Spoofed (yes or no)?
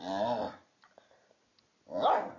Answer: no